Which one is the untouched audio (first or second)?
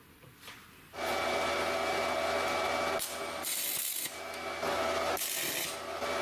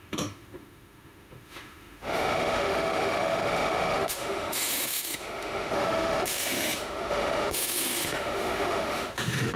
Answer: first